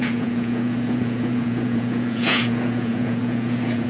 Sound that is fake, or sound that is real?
fake